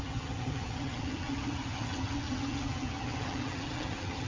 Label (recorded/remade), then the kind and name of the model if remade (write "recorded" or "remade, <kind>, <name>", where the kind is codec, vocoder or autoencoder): remade, vocoder, HiFi-GAN